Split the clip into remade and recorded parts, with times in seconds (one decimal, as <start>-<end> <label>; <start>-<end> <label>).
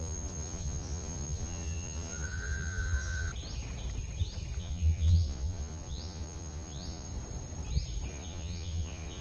0.0-3.3 remade; 3.3-4.6 recorded; 4.6-7.1 remade; 7.1-8.1 recorded; 8.1-9.2 remade